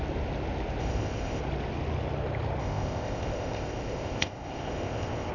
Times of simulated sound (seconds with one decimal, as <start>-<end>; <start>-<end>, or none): 0.8-1.4; 2.6-5.3